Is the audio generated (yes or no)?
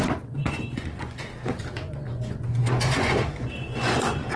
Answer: yes